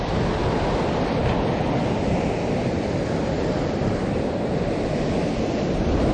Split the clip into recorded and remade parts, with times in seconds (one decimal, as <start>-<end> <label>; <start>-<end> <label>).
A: 0.0-2.6 recorded; 2.6-4.9 remade; 4.9-6.1 recorded